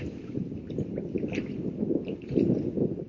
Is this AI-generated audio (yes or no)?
yes